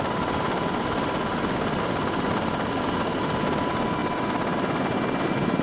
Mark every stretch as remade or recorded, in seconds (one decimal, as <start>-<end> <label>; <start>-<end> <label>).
0.0-5.6 recorded